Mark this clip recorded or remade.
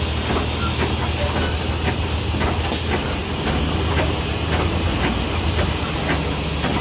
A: recorded